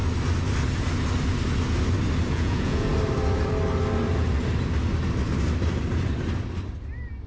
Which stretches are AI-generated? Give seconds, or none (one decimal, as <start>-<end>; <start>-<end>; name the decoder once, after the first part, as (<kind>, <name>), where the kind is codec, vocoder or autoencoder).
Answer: 2.3-2.9 (vocoder, Vocos)